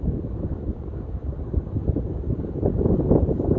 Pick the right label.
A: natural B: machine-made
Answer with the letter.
A